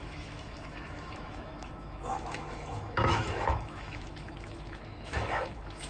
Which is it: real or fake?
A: fake